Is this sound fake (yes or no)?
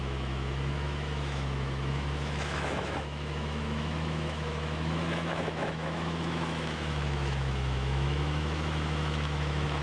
yes